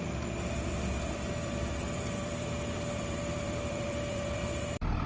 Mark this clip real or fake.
fake